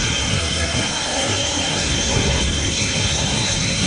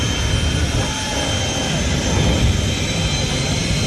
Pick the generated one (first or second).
first